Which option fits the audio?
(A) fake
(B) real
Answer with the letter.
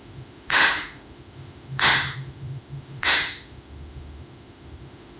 A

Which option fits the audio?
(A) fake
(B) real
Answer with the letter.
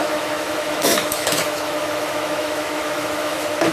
A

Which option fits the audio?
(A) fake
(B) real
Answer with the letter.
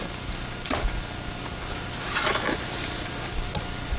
B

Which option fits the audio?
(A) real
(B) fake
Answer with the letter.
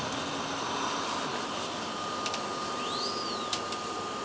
A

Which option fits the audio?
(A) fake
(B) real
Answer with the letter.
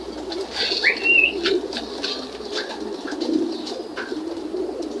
B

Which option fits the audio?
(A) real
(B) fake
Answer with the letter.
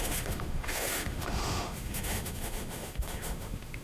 B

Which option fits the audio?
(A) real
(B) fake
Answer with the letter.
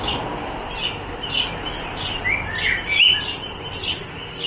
A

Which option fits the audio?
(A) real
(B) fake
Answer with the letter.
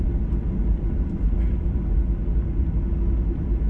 A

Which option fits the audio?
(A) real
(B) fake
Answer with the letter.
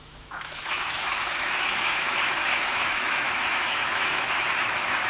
B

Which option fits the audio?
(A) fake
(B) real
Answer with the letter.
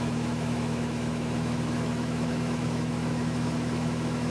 A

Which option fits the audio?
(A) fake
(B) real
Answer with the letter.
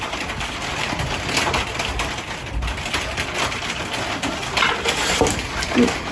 B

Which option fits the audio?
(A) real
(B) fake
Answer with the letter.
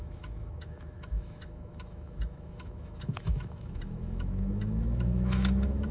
B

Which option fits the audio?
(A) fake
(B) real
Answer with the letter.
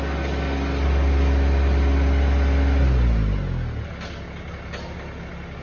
B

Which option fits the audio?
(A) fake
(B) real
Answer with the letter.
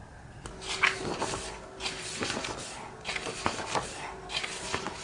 B